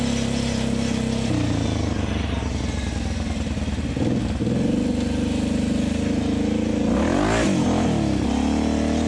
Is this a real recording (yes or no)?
yes